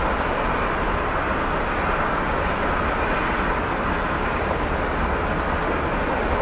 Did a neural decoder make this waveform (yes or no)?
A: no